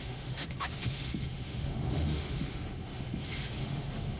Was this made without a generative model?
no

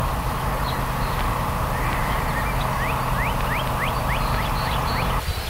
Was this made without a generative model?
yes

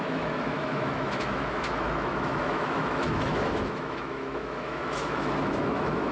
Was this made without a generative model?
no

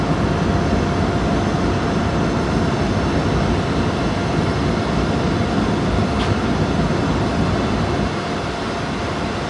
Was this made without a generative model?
yes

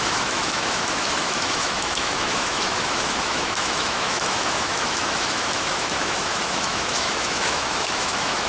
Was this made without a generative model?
no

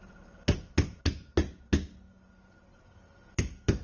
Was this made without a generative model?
yes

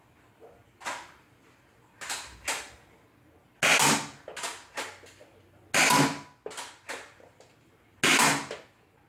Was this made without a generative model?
yes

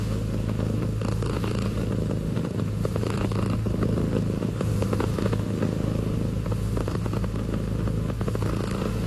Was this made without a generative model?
no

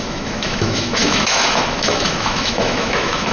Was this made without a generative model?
no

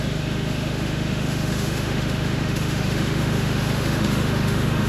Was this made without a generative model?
no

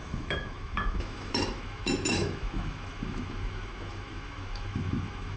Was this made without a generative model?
no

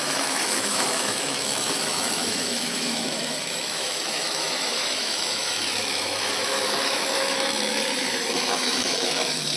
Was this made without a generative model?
no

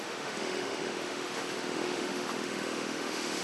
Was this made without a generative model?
no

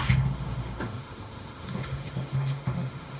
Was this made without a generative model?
no